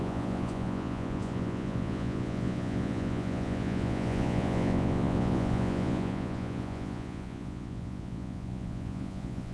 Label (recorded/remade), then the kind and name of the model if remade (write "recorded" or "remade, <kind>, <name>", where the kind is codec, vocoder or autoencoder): remade, vocoder, Vocos